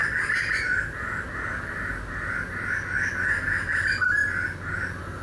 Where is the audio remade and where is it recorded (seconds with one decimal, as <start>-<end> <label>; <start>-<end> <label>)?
0.0-5.2 recorded